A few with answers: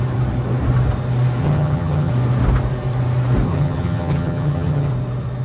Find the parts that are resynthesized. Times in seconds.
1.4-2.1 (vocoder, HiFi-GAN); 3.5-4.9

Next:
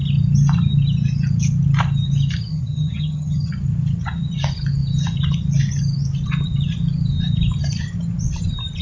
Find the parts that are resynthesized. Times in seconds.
2.5-3.5 (vocoder, HiFi-GAN)

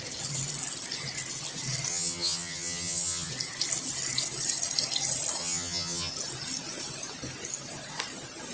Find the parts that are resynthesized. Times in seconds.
1.9-3.3 (vocoder, HiFi-GAN); 5.4-6.1

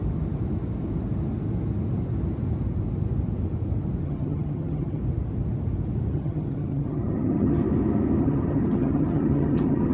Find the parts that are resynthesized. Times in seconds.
4.0-5.0 (vocoder, HiFi-GAN); 6.1-7.6; 8.2-9.9

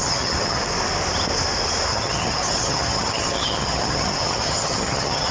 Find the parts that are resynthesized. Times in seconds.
0.0-0.6 (vocoder, HiFi-GAN); 1.9-5.3